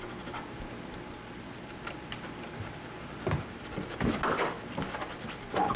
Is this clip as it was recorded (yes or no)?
yes